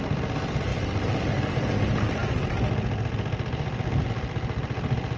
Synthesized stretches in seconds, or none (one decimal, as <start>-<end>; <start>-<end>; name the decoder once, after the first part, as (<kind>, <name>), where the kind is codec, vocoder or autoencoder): none